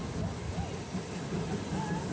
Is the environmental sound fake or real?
real